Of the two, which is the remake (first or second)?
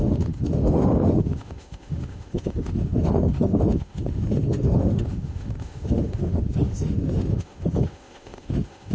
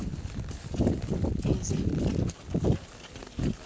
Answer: first